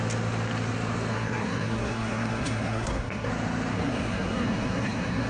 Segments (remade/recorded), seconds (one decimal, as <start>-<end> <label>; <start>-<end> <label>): 0.0-1.1 recorded; 1.1-3.3 remade; 3.3-3.7 recorded; 3.7-5.3 remade